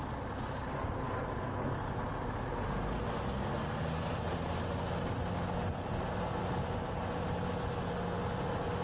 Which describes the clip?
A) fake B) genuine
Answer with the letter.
B